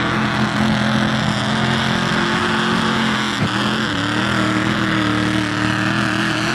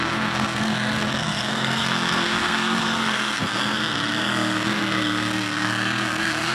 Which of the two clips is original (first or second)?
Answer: first